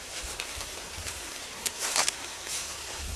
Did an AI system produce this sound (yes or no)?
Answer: yes